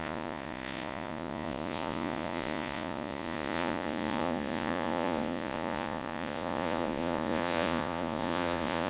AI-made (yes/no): yes